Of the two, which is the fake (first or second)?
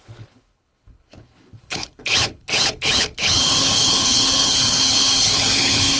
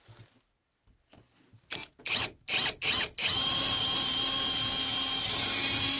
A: first